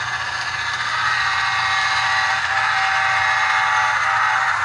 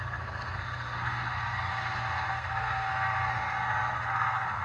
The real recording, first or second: first